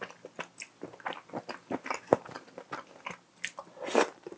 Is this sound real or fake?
real